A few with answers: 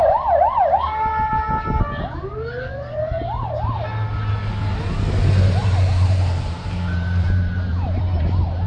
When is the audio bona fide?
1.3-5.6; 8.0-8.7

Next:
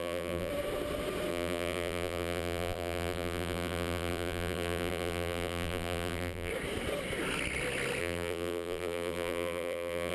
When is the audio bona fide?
0.5-1.3; 6.5-8.0

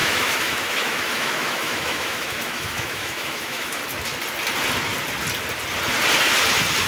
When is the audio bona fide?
3.8-6.9

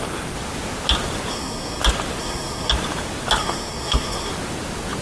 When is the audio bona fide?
0.0-1.3; 1.8-2.2; 2.7-3.4; 4.3-5.0

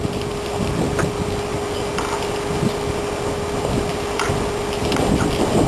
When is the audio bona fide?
0.0-4.8; 5.3-5.7

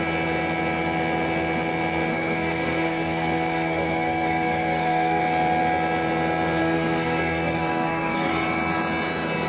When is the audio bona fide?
0.0-2.1; 5.2-6.6; 8.3-9.5

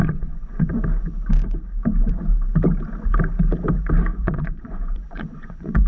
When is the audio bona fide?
0.7-4.2

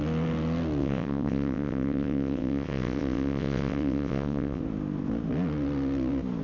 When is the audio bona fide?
0.0-0.8; 4.6-6.4